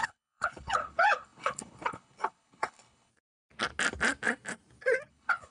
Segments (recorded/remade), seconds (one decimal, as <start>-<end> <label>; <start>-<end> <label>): 0.0-3.1 remade; 3.1-5.1 recorded; 5.1-5.5 remade

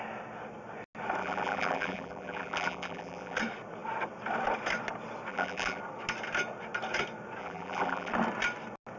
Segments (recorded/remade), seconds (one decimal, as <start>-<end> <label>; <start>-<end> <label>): 0.0-1.2 recorded; 1.2-3.4 remade; 3.4-5.3 recorded; 5.3-5.8 remade; 5.8-7.4 recorded; 7.4-8.1 remade; 8.1-9.0 recorded

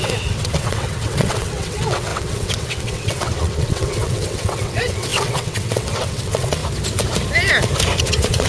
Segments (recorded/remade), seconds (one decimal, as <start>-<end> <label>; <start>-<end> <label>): 0.0-6.6 remade; 6.6-8.0 recorded; 8.0-8.5 remade

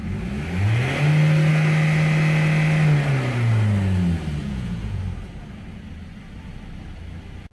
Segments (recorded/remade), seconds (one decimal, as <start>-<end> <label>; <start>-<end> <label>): 0.0-4.4 recorded; 4.4-5.0 remade; 5.0-7.5 recorded

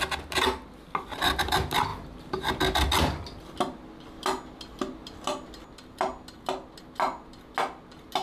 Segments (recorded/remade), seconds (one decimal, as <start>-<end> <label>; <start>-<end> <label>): 0.0-8.2 recorded

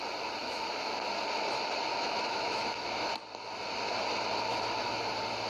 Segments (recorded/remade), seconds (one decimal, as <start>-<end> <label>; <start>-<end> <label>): 0.0-0.4 recorded; 0.4-0.9 remade; 0.9-1.9 recorded; 1.9-3.1 remade; 3.1-4.5 recorded; 4.5-5.0 remade; 5.0-5.5 recorded

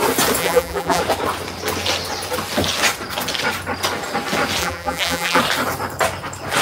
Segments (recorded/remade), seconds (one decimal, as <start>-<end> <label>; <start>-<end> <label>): 0.0-0.4 recorded; 0.4-1.0 remade; 1.0-4.6 recorded; 4.6-5.4 remade; 5.4-6.6 recorded

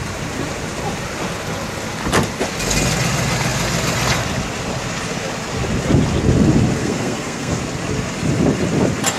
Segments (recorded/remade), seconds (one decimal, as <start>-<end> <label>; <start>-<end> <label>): 0.0-6.8 recorded; 6.8-7.6 remade; 7.6-9.2 recorded